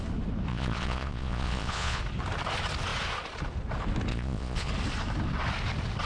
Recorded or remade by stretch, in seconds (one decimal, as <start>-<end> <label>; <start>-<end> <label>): 0.0-0.5 recorded; 0.5-2.0 remade; 2.0-4.1 recorded; 4.1-4.7 remade; 4.7-6.1 recorded